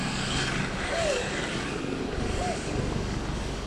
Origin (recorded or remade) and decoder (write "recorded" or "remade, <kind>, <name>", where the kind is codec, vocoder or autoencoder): remade, codec, DAC